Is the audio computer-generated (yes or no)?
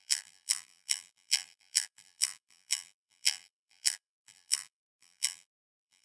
yes